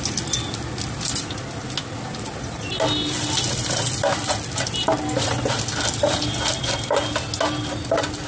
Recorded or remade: recorded